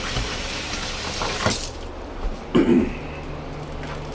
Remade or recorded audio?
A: recorded